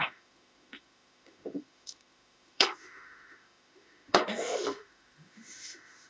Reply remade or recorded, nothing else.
remade